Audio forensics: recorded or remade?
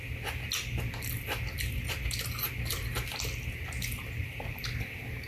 recorded